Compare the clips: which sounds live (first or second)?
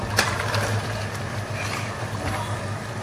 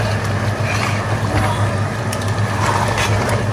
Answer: second